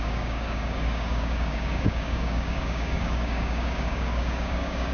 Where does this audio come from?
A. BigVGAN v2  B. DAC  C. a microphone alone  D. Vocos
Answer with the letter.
B